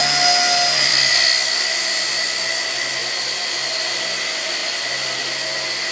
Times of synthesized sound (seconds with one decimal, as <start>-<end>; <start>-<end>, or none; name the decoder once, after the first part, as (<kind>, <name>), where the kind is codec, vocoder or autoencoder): none